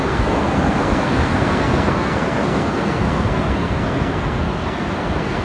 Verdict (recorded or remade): remade